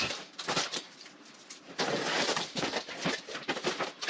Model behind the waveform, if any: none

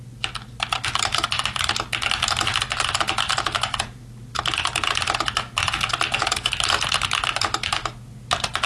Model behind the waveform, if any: none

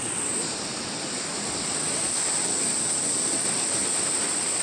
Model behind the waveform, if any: none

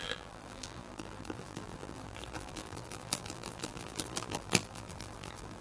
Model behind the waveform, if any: vocoder, BigVGAN v2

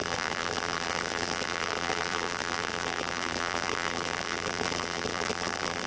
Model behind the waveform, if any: vocoder, BigVGAN v2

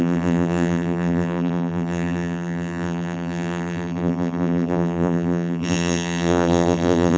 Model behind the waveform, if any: vocoder, BigVGAN v2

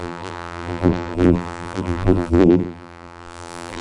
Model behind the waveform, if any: vocoder, BigVGAN v2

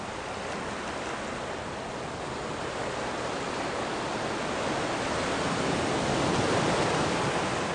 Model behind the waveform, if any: none